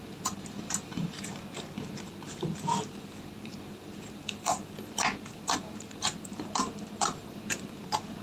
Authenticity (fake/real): fake